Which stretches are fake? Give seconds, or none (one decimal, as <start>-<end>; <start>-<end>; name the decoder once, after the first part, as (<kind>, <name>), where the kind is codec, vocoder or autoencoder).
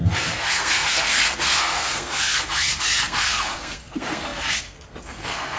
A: 0.0-5.6 (codec, SNAC)